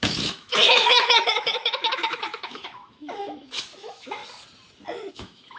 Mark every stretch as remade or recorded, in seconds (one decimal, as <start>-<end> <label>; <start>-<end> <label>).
0.0-4.2 remade; 4.2-5.1 recorded; 5.1-5.6 remade